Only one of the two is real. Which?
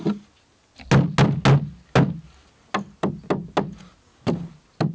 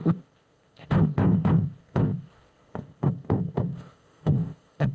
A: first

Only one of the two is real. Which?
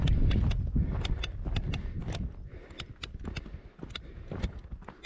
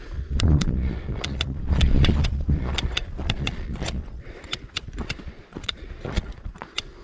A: first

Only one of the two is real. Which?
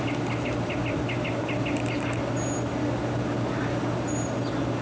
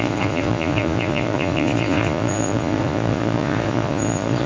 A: first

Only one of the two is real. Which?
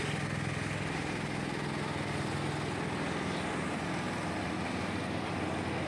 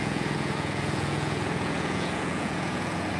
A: first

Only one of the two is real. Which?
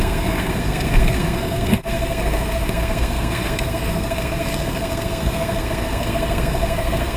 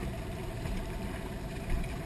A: second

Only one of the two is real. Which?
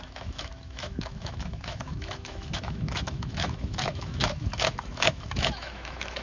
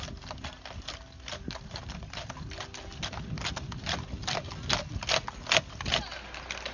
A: second